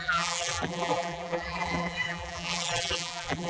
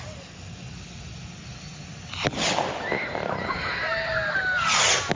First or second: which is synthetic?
first